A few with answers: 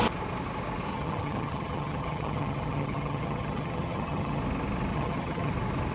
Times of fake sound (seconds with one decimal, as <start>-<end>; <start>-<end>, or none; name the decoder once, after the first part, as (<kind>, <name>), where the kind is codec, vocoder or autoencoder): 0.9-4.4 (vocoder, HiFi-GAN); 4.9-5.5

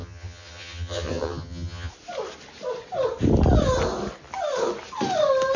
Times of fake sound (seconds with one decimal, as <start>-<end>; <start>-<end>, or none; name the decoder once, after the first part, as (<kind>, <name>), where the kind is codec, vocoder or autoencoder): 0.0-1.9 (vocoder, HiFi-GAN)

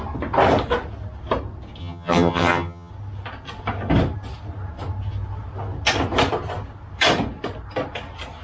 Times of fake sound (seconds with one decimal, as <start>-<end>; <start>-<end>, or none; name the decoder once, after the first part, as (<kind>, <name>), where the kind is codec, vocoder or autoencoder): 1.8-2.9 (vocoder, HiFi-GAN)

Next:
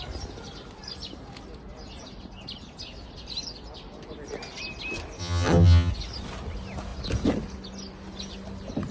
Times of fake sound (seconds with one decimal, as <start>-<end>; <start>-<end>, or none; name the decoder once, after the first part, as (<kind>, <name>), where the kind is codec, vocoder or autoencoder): 5.2-5.9 (vocoder, HiFi-GAN)

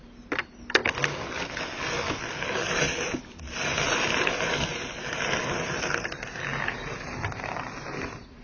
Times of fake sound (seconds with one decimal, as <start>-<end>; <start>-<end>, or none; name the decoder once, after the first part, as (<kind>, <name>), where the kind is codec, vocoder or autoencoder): none

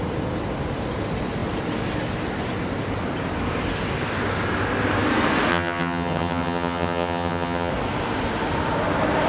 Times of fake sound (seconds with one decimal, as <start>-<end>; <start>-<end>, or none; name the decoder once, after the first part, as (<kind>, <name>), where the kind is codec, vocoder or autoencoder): 5.5-7.7 (vocoder, HiFi-GAN)

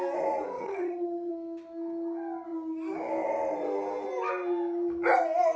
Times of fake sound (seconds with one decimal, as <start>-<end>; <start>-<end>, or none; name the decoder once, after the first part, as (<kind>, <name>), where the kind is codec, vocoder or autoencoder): 0.6-1.3 (vocoder, HiFi-GAN)

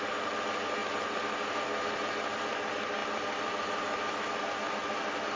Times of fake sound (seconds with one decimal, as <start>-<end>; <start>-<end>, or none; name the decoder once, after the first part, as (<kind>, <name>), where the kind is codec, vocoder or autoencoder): none